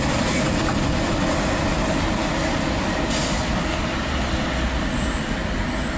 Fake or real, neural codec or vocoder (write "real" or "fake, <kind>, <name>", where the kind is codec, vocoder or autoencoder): real